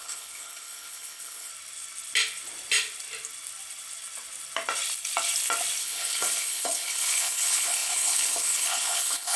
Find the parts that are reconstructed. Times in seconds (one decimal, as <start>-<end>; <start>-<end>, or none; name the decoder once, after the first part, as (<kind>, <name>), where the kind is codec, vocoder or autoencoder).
0.0-1.5 (codec, HILCodec); 5.8-9.4